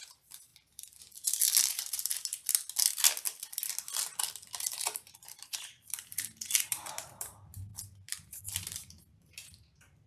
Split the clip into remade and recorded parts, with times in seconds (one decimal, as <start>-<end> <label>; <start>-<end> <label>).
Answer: 0.0-0.5 remade; 0.5-1.7 recorded; 1.7-2.3 remade; 2.3-4.6 recorded; 4.6-10.1 remade